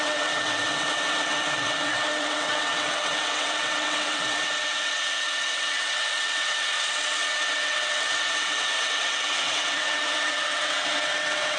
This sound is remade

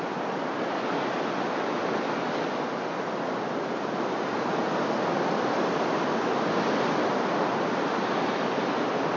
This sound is recorded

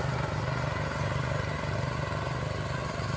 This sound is recorded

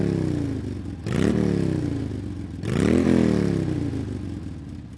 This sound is recorded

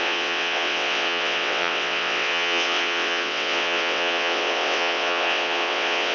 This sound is remade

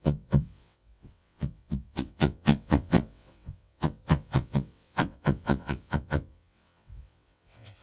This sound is remade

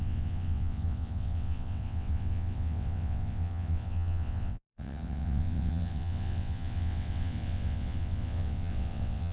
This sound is remade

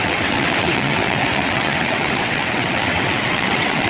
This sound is remade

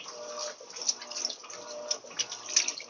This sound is recorded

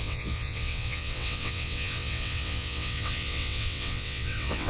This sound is remade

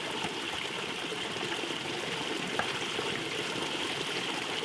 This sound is recorded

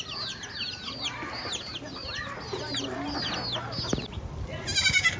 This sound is recorded